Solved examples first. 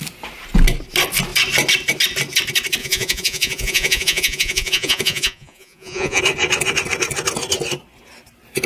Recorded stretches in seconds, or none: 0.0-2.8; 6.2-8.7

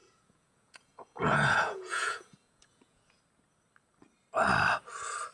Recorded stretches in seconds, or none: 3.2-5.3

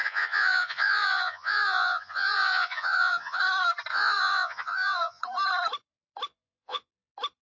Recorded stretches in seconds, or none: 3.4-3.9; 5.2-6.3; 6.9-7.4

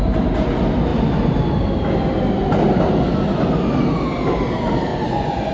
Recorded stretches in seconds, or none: 0.0-4.9